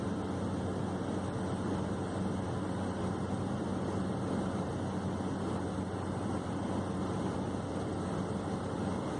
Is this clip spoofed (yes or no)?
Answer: no